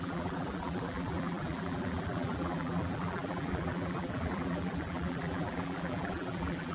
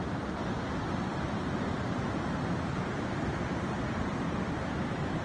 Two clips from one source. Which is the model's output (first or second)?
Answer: first